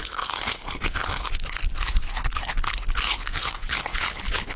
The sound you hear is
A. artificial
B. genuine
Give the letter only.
A